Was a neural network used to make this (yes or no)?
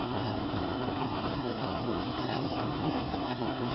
yes